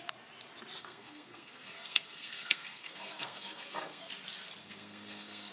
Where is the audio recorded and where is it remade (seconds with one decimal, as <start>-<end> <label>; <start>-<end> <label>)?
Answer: 0.0-0.8 recorded; 0.8-4.1 remade; 4.1-4.6 recorded; 4.6-5.5 remade